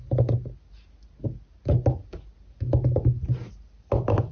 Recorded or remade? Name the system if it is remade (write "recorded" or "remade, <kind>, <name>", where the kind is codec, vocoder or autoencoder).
recorded